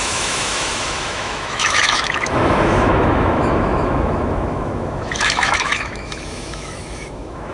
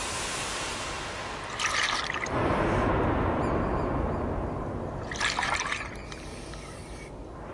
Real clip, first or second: second